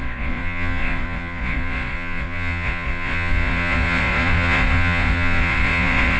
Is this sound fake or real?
fake